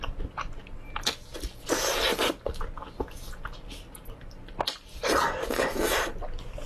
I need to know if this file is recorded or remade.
recorded